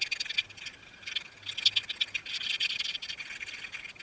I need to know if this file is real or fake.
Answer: real